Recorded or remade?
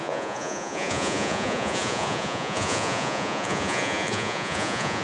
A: remade